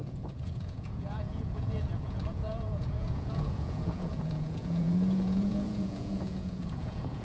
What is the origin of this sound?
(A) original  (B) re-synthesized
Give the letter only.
B